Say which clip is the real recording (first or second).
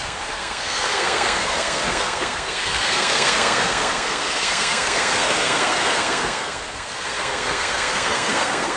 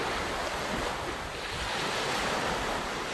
second